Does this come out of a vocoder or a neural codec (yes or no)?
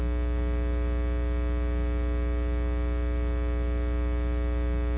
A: no